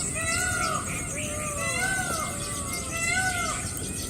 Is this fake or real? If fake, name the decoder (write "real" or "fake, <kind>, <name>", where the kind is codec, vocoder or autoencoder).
real